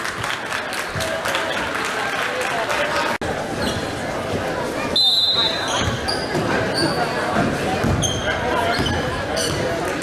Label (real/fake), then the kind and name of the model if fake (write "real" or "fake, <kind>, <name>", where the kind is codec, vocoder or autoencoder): real